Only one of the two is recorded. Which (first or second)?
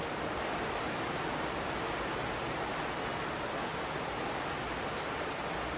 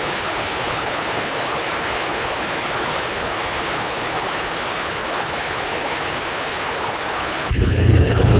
first